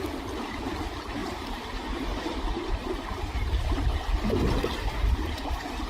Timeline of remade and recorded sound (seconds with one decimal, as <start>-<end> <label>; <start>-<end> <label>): 0.0-1.2 recorded; 1.2-4.0 remade; 4.0-5.9 recorded